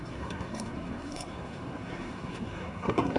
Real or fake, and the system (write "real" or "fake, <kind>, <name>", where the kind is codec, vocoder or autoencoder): fake, codec, SNAC